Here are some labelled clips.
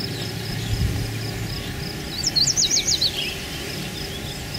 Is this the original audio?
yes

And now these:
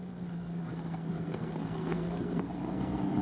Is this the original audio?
no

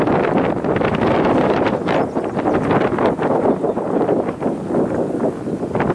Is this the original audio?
yes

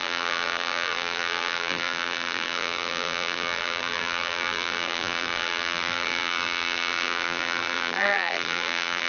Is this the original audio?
no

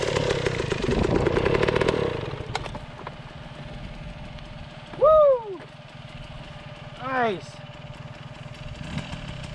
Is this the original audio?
yes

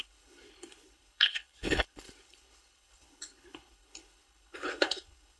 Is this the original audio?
no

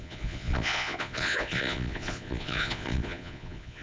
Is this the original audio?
no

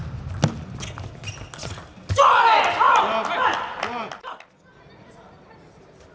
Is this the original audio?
yes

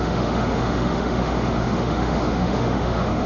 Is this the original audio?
no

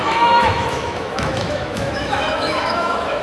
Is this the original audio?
no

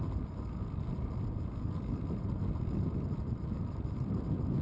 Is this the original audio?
yes